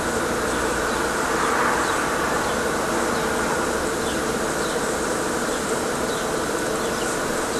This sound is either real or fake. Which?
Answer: real